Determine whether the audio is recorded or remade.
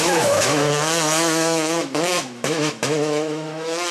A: remade